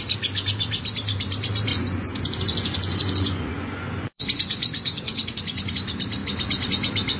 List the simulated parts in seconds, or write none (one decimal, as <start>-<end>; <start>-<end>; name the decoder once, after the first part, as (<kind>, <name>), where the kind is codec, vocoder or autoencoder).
1.7-5.7 (vocoder, Vocos)